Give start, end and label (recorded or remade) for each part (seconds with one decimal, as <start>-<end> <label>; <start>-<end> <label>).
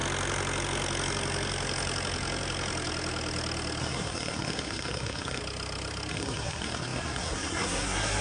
0.0-3.8 recorded; 3.8-5.4 remade; 5.4-6.1 recorded; 6.1-8.2 remade